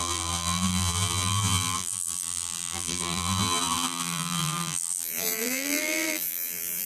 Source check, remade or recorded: remade